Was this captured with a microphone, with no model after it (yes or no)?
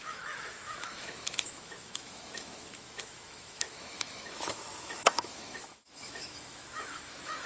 no